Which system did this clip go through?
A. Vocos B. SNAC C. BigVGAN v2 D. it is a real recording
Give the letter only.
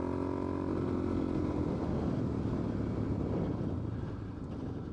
D